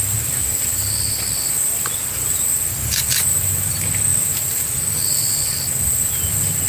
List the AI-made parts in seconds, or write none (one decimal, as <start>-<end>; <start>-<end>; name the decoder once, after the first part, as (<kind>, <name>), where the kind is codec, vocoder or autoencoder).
none